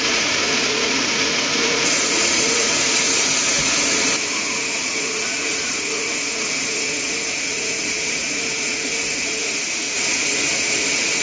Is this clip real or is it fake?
fake